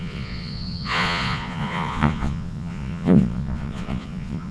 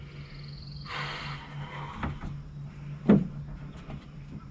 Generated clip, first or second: first